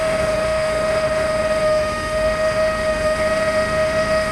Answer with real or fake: fake